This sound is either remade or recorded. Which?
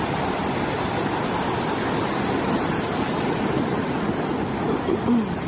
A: recorded